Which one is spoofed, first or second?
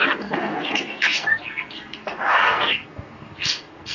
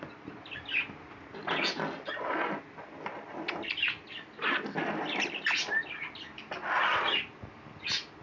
first